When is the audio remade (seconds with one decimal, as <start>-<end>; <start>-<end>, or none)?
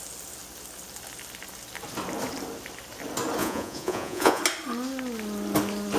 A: 3.4-4.4